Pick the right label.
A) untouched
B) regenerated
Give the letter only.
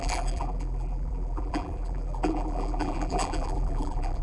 B